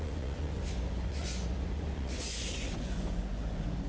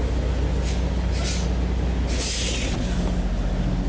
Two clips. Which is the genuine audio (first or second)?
second